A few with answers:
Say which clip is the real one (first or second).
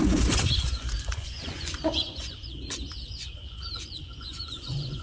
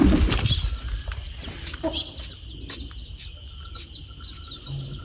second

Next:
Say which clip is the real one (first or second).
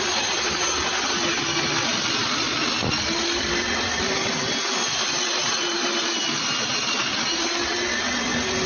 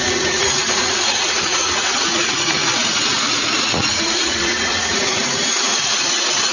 first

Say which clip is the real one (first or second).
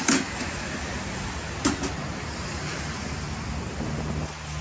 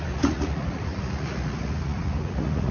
first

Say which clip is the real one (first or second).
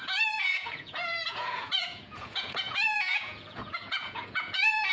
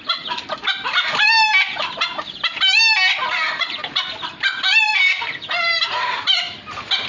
second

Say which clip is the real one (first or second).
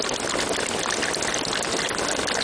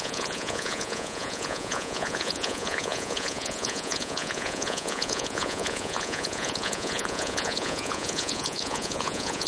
first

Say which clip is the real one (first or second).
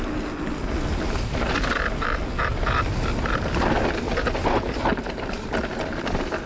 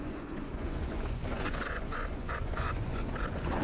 first